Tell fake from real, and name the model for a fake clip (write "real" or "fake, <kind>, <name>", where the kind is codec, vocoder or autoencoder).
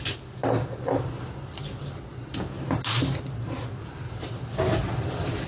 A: real